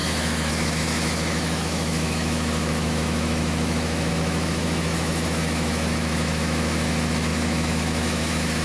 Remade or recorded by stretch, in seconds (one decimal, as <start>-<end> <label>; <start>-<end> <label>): 0.0-8.6 remade